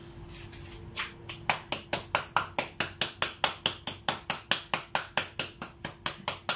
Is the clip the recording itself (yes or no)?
yes